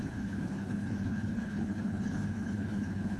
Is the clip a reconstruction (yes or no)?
yes